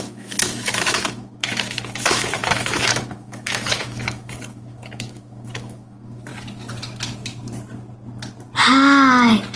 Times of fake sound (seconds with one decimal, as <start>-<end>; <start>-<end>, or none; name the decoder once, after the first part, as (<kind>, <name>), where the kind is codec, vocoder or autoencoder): 0.0-6.3 (autoencoder, DAC-VAE)